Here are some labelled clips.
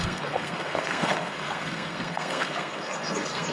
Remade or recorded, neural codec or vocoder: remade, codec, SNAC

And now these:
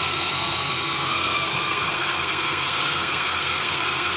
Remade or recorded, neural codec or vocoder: remade, codec, SNAC